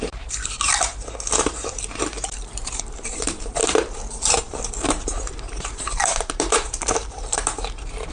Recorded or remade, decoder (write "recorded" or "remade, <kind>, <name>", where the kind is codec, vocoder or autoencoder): remade, vocoder, BigVGAN v2